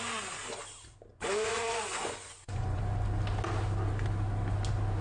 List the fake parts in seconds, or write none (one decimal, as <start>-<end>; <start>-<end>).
1.1-2.8